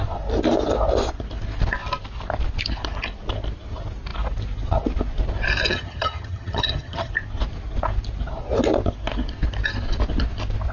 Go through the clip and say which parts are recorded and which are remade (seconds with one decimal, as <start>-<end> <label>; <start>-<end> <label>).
0.0-5.7 recorded; 5.7-7.1 remade; 7.1-10.7 recorded